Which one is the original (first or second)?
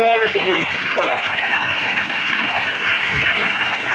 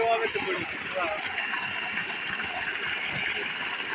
second